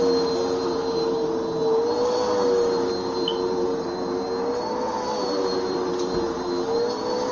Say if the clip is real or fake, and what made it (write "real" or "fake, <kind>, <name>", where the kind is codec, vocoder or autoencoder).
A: real